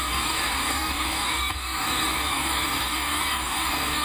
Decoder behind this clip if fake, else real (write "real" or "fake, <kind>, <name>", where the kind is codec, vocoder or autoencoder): fake, codec, DAC